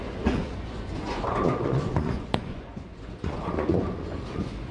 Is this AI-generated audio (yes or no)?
yes